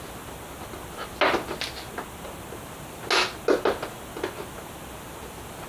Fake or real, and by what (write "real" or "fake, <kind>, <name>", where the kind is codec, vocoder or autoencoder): real